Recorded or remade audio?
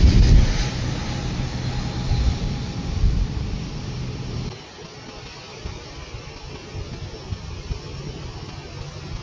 recorded